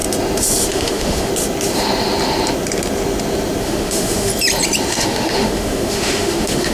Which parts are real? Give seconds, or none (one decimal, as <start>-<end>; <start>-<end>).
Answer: 0.0-0.7; 1.3-3.6; 4.3-4.9